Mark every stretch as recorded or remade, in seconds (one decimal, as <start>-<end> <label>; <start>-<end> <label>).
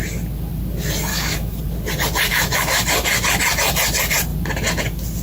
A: 0.0-1.1 recorded; 1.1-1.6 remade; 1.6-2.3 recorded; 2.3-2.9 remade; 2.9-5.2 recorded